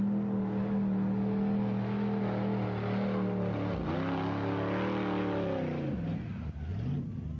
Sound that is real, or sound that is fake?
real